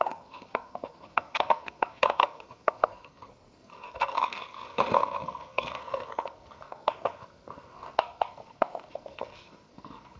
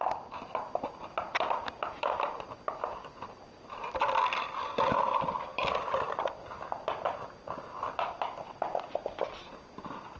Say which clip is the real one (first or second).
second